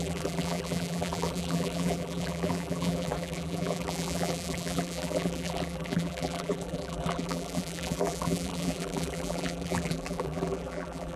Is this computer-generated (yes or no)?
yes